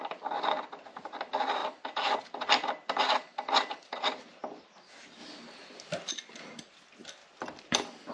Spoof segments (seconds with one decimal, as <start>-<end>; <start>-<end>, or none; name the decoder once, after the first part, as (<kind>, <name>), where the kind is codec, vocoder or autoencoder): 7.2-8.1 (vocoder, BigVGAN v2)